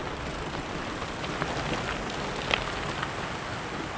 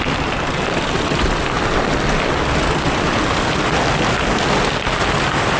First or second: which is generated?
first